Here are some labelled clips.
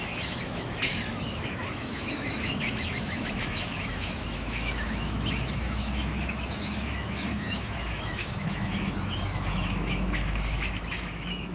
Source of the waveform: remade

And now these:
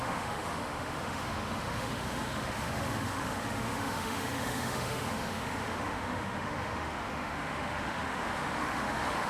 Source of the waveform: remade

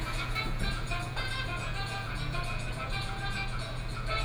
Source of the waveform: remade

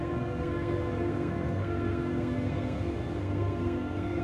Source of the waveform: remade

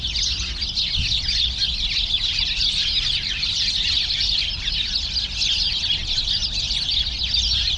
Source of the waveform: recorded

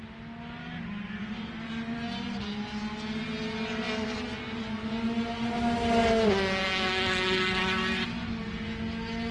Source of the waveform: recorded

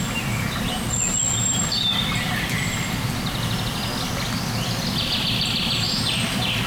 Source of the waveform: recorded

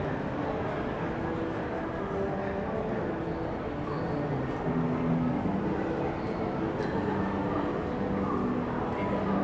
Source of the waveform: recorded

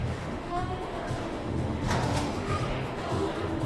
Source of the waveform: remade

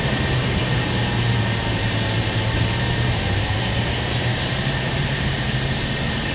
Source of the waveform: remade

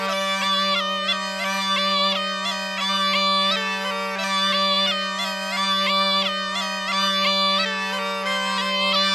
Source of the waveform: recorded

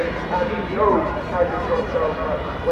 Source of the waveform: remade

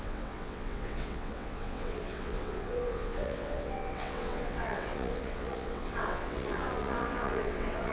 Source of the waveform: remade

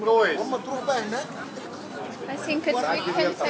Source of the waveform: recorded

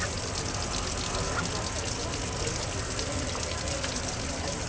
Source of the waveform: recorded